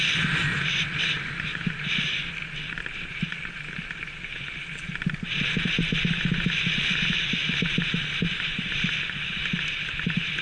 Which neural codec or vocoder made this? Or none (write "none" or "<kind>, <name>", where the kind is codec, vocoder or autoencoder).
none